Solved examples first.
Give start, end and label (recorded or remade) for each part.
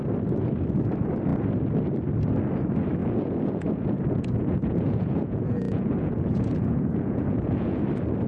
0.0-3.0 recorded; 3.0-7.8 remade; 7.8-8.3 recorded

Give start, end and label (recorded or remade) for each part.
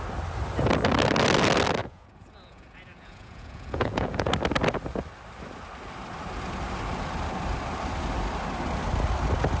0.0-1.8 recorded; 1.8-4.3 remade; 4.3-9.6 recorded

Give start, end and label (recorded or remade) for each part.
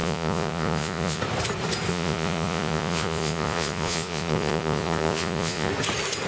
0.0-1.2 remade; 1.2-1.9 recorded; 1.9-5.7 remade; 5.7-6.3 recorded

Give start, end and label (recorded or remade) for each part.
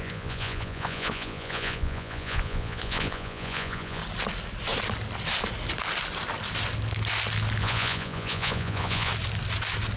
0.0-4.0 remade; 4.0-7.6 recorded; 7.6-9.1 remade; 9.1-10.0 recorded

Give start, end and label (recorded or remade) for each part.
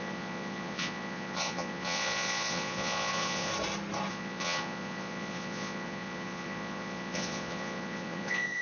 0.0-3.5 remade; 3.5-4.1 recorded; 4.1-8.6 remade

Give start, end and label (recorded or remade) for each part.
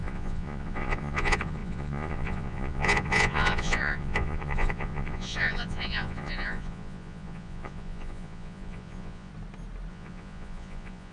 0.0-9.3 remade; 9.3-9.9 recorded; 9.9-11.1 remade